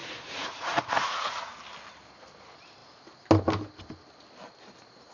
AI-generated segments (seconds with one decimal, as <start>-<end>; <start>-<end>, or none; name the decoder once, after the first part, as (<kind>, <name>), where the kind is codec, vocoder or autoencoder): 0.0-1.5 (vocoder, Vocos)